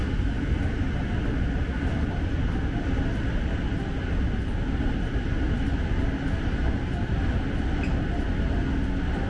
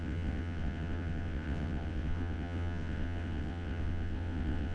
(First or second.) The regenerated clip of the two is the second